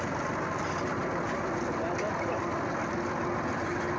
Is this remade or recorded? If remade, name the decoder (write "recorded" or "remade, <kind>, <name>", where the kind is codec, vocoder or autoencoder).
recorded